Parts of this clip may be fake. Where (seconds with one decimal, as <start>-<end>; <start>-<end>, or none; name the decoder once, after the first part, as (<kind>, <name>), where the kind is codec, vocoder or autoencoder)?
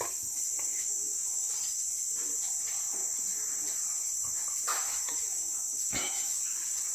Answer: 0.7-1.5 (autoencoder, DAC-VAE); 4.7-6.4